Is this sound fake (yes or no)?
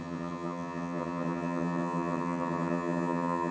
yes